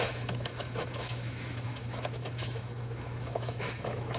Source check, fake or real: fake